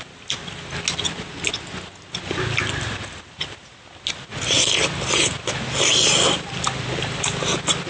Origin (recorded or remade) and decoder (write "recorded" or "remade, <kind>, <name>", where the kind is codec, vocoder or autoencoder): recorded